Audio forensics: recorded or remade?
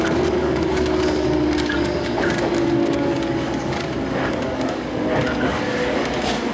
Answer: remade